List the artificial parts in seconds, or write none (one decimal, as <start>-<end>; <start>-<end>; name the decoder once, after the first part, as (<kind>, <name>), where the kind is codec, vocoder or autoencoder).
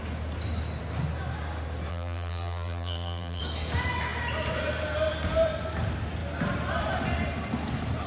1.9-3.4 (vocoder, BigVGAN v2)